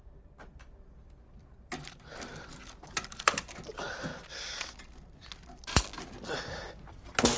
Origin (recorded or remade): recorded